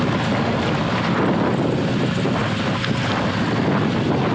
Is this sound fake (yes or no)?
no